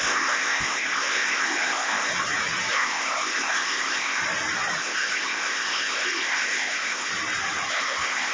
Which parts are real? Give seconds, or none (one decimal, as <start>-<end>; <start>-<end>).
2.1-2.7; 4.2-4.8; 7.1-7.7